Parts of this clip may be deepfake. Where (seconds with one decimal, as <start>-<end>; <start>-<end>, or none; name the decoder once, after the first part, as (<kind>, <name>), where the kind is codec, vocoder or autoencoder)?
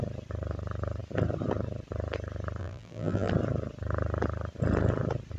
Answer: 2.6-3.3 (vocoder, BigVGAN v2)